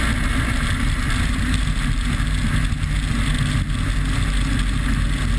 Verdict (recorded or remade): recorded